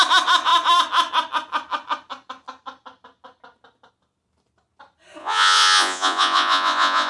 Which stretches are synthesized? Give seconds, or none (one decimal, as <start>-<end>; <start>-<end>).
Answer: 5.2-7.1